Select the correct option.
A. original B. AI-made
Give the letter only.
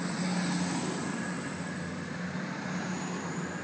A